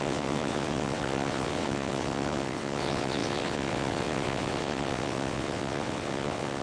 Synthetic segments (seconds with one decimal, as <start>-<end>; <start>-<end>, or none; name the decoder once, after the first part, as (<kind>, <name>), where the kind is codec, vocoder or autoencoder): 0.0-6.6 (vocoder, WaveNeXt)